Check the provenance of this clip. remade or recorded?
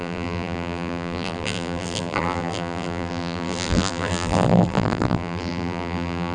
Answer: remade